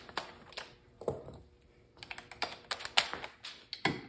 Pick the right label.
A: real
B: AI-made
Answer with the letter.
A